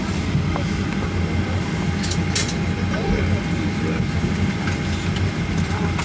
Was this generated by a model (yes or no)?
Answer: no